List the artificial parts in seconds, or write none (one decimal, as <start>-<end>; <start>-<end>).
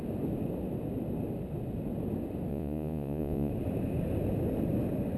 2.5-3.5